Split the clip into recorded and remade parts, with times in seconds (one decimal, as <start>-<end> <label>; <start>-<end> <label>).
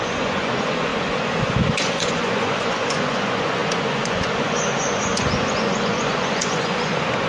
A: 0.0-7.3 remade